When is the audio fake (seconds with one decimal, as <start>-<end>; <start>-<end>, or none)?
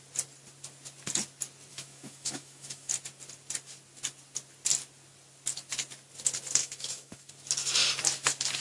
1.7-2.9; 6.6-7.3